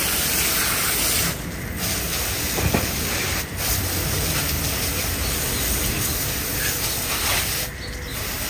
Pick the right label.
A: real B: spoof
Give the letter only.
A